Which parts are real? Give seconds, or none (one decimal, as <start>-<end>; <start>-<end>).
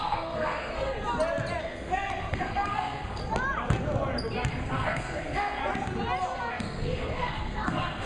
0.9-1.6; 3.2-4.5; 5.6-6.5